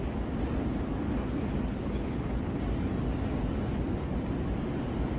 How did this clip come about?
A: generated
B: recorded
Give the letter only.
B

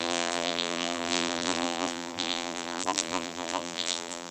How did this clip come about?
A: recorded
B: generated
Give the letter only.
B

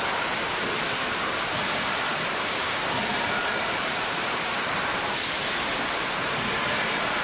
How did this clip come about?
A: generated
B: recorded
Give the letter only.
A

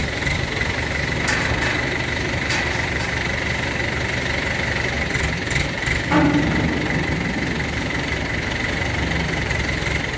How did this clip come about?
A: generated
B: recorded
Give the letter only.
A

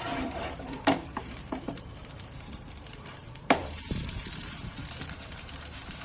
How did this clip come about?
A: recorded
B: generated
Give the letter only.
B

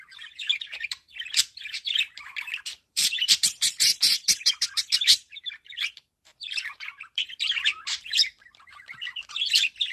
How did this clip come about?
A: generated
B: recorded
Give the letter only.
A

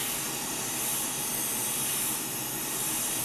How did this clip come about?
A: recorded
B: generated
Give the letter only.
A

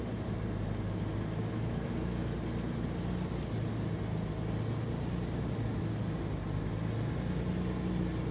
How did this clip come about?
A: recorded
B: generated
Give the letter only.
A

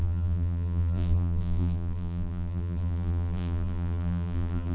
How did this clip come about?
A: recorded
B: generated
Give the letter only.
B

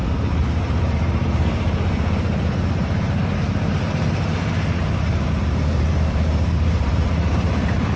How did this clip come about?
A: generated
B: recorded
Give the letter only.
A